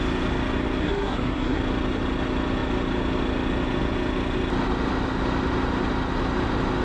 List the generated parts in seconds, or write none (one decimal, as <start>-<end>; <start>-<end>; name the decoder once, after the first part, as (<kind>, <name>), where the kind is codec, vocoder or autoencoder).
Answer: 0.8-1.6 (codec, SNAC)